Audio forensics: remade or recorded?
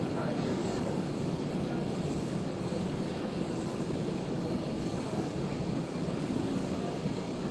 remade